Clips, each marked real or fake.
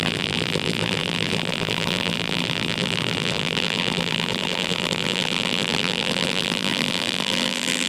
fake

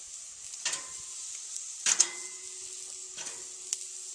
real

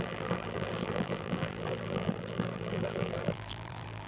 fake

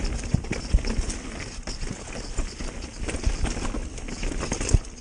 real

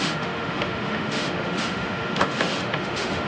fake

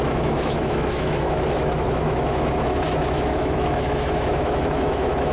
fake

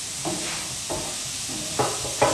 real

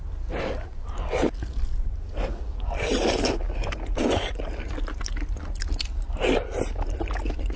real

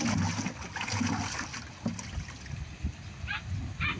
real